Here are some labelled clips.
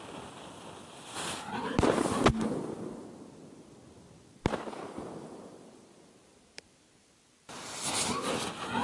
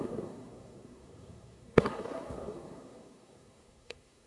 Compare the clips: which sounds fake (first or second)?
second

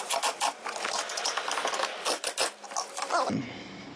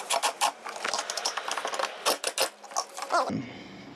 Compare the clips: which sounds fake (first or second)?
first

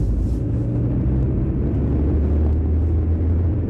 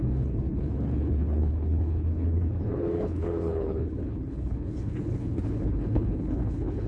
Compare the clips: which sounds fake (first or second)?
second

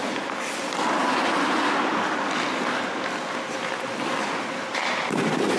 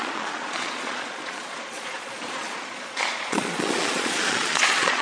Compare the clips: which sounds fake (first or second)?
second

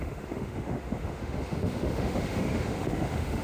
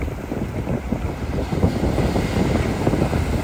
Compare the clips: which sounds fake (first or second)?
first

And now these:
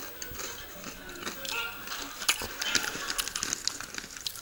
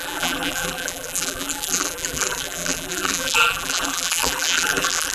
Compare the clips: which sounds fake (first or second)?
second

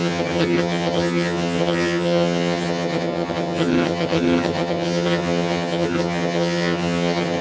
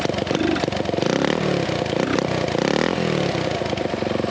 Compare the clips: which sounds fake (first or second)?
first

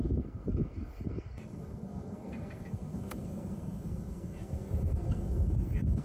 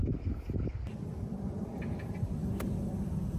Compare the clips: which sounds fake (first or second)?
first